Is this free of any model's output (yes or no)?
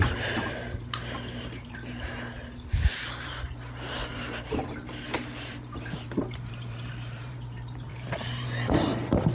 no